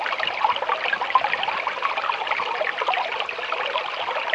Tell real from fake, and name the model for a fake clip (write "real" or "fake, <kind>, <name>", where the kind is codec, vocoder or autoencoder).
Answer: real